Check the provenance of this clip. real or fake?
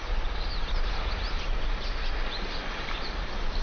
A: real